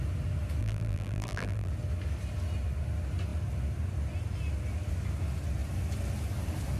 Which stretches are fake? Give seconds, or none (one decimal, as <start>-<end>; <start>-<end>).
0.6-1.7

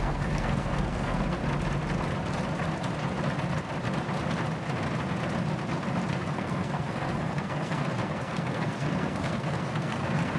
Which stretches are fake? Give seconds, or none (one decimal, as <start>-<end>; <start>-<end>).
0.0-1.4; 6.1-10.4

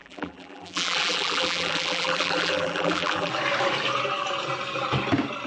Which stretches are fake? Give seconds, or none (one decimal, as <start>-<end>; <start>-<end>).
0.0-3.3

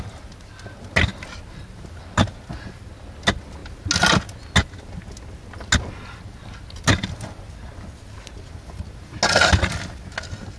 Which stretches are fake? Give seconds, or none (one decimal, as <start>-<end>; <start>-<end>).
none

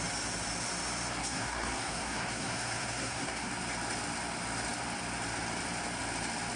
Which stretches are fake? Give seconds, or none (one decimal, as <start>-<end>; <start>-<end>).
1.2-3.5

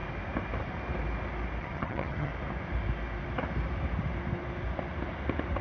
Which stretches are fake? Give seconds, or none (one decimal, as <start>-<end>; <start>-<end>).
1.6-2.3

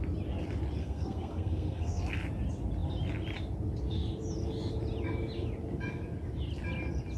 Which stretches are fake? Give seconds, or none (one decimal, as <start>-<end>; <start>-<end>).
0.8-2.0

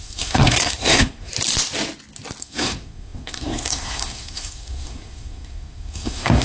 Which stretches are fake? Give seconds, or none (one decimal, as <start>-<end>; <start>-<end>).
0.0-1.3; 2.4-6.4